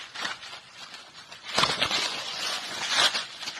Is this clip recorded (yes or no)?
no